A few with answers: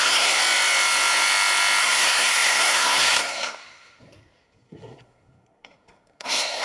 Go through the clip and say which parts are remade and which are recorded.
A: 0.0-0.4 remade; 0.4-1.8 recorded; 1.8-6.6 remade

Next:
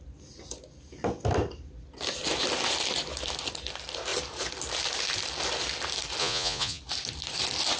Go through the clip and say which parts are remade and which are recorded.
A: 0.0-6.2 recorded; 6.2-6.8 remade; 6.8-7.8 recorded

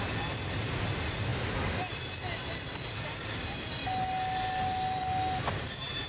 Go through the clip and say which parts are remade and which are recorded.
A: 0.0-6.1 recorded

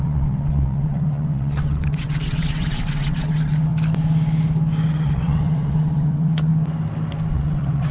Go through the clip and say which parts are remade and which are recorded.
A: 0.0-3.7 remade; 3.7-4.9 recorded; 4.9-6.5 remade; 6.5-7.3 recorded; 7.3-7.9 remade

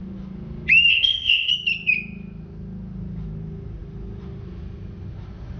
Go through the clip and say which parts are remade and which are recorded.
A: 0.0-0.9 recorded; 0.9-1.5 remade; 1.5-5.6 recorded

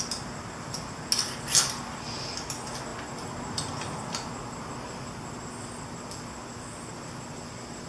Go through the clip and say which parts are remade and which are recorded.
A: 0.0-7.9 recorded